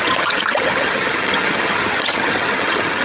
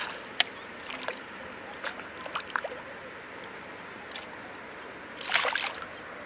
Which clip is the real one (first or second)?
second